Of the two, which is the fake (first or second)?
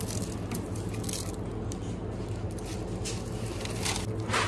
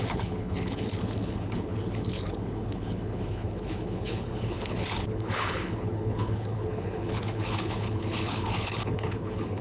second